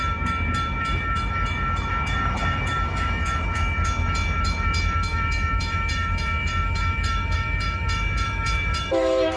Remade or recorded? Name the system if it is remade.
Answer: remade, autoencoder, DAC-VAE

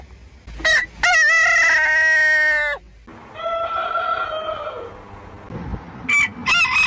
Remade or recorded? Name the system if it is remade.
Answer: recorded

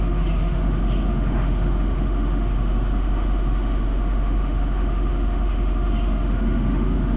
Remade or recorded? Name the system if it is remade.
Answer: remade, autoencoder, DAC-VAE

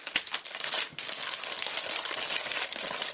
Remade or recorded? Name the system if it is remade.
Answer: recorded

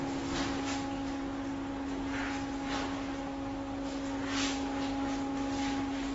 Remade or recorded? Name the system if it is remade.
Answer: recorded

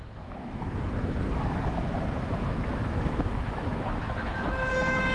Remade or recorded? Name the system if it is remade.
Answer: remade, autoencoder, DAC-VAE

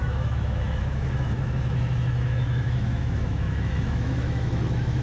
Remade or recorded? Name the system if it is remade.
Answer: remade, autoencoder, DAC-VAE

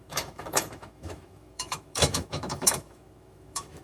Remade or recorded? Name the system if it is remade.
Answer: remade, autoencoder, DAC-VAE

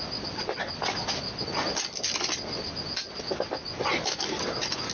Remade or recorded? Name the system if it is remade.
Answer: recorded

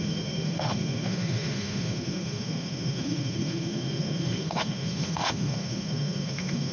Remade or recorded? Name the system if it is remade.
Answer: remade, autoencoder, DAC-VAE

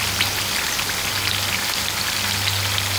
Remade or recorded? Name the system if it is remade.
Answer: recorded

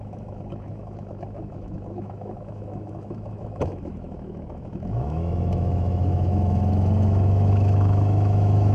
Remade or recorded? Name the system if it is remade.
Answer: remade, autoencoder, DAC-VAE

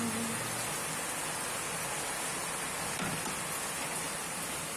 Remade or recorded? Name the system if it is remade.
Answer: recorded